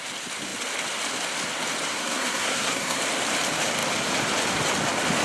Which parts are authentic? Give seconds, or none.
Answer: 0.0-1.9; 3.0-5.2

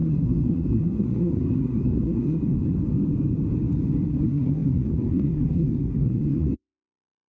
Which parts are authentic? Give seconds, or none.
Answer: 2.4-4.1

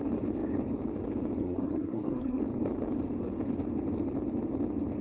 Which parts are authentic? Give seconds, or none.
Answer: 0.0-1.4; 2.4-5.0

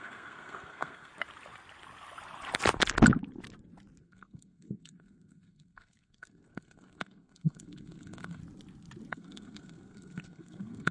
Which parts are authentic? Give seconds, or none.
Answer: 1.1-4.0; 8.4-9.1

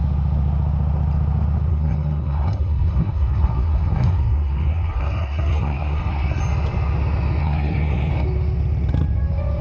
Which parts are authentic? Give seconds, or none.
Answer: 0.0-1.7; 6.4-7.4; 8.1-9.6